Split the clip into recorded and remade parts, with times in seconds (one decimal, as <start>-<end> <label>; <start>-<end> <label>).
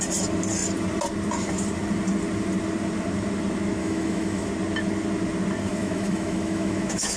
0.0-3.8 recorded; 3.8-4.5 remade; 4.5-5.7 recorded; 5.7-7.2 remade